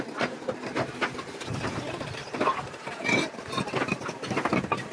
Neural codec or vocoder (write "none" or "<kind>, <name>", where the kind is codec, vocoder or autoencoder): none